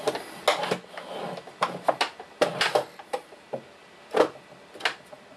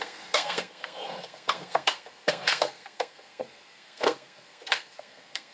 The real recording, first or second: first